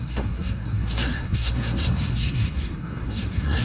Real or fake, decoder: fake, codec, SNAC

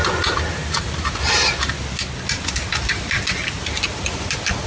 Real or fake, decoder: real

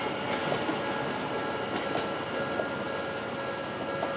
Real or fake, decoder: real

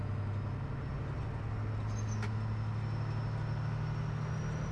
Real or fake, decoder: real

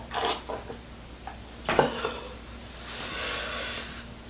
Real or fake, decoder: real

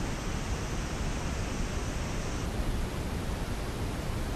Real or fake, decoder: fake, vocoder, BigVGAN v2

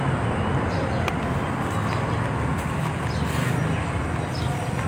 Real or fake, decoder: real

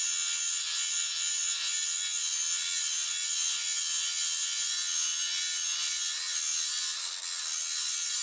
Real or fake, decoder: real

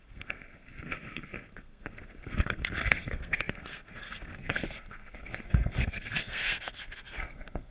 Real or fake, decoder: fake, codec, SNAC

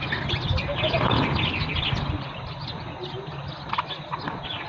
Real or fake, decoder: real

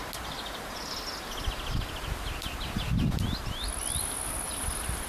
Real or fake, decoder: real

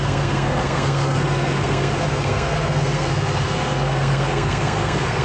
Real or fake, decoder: fake, codec, SNAC